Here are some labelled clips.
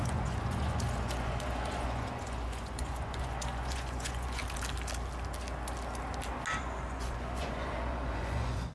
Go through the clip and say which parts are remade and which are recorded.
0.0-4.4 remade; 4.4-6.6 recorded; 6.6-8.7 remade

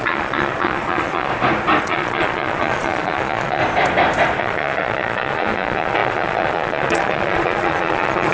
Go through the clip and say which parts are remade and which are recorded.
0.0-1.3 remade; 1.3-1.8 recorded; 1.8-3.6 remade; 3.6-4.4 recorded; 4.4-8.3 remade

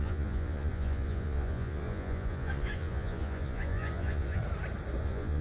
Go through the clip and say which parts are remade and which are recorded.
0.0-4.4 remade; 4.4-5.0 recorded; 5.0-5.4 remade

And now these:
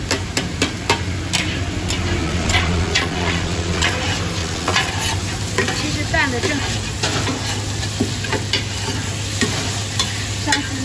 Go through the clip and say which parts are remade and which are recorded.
0.0-2.2 recorded; 2.2-3.9 remade; 3.9-4.4 recorded; 4.4-4.9 remade; 4.9-10.8 recorded

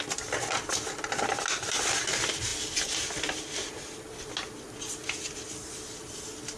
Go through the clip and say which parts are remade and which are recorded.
0.0-6.6 recorded

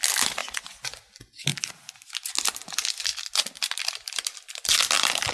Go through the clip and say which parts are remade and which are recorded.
0.0-0.4 recorded; 0.4-1.0 remade; 1.0-5.3 recorded